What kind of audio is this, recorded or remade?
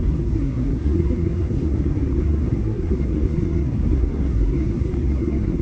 remade